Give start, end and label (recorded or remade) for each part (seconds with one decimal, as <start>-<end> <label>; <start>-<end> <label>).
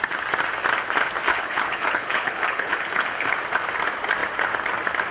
0.0-1.3 recorded; 1.3-3.3 remade; 3.3-5.1 recorded